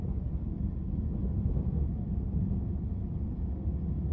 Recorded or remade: recorded